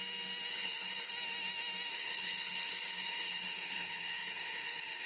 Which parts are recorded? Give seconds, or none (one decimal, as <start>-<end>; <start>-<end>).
0.0-0.5; 1.1-1.9